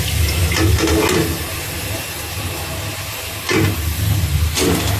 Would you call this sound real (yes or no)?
yes